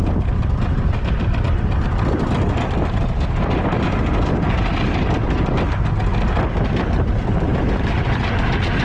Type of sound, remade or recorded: recorded